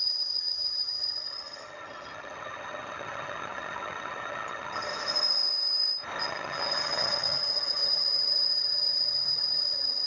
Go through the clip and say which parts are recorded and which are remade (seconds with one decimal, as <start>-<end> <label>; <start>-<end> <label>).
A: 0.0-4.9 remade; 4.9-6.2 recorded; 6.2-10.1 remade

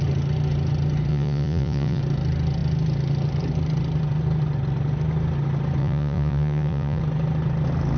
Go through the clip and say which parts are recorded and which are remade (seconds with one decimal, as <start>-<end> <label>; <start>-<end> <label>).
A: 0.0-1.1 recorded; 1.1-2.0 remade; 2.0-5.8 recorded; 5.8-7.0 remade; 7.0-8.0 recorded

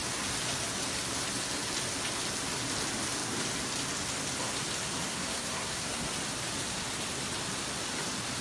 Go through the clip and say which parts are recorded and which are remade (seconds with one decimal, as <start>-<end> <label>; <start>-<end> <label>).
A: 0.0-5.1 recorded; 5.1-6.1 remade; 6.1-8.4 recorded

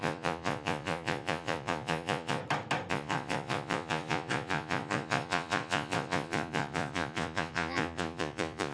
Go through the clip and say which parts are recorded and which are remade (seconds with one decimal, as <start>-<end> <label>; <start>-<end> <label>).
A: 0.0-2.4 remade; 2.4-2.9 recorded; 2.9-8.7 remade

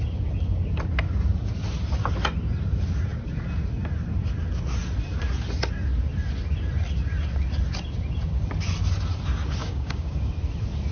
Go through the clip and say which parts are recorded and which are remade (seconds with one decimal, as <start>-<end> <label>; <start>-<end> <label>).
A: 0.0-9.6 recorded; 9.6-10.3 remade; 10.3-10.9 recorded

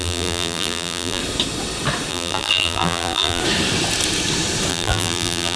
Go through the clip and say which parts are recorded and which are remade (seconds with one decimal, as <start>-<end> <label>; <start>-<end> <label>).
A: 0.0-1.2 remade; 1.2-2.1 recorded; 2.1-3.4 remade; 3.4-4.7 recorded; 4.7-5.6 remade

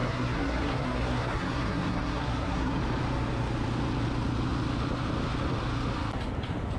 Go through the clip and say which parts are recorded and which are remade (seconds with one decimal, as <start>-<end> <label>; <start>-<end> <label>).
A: 0.0-2.8 remade; 2.8-6.8 recorded